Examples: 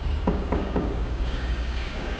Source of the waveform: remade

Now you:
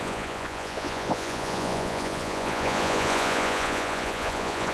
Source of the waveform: remade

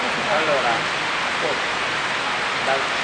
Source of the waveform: recorded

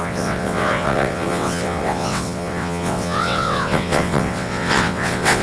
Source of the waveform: remade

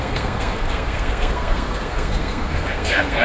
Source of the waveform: remade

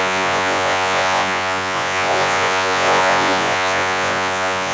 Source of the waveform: remade